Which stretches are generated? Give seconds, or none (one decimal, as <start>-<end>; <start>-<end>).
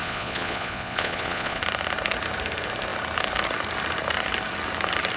0.0-1.6